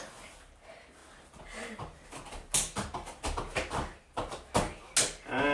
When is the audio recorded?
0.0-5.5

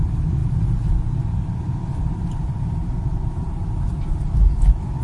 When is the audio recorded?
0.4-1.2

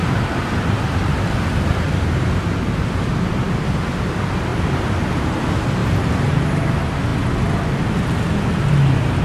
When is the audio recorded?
2.3-5.8; 6.3-9.2

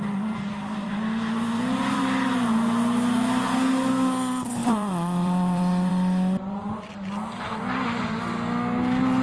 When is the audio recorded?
0.0-0.5; 2.0-4.6; 5.9-9.2

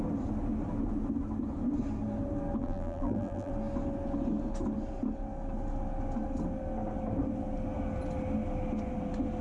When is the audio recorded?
0.0-2.6; 3.5-9.4

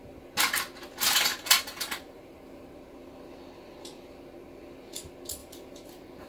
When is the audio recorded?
0.0-1.3; 2.7-5.4